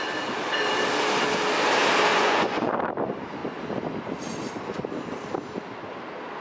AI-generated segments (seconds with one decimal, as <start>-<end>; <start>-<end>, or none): 2.1-2.7